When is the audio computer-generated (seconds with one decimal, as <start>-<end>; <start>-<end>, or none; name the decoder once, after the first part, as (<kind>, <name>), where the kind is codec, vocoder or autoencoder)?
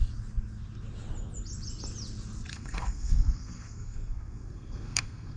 2.5-5.4 (codec, SNAC)